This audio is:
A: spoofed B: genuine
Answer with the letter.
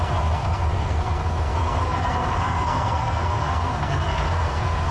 A